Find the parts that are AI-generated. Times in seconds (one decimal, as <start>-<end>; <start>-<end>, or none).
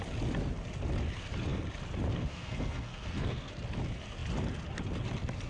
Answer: 2.1-3.5